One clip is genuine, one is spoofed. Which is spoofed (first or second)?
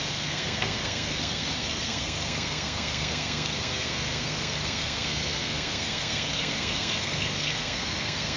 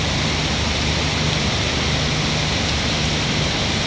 first